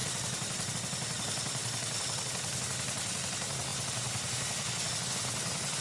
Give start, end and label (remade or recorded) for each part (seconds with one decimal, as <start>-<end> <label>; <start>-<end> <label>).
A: 0.0-0.7 remade; 0.7-1.6 recorded; 1.6-2.2 remade; 2.2-5.8 recorded